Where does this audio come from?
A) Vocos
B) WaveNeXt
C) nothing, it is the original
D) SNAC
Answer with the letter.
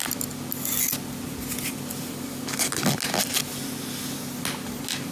C